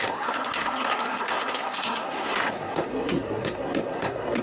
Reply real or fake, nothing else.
fake